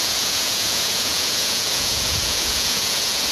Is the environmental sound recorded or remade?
remade